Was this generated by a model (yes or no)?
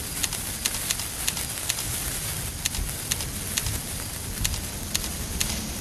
no